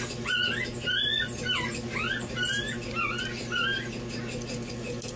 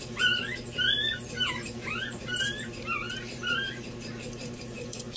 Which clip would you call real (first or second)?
first